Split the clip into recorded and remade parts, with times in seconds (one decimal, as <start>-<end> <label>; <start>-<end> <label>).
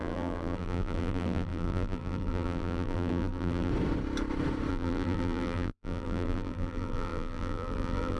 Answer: 0.0-3.7 remade; 3.7-4.7 recorded; 4.7-8.2 remade